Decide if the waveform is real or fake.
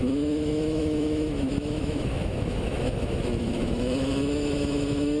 fake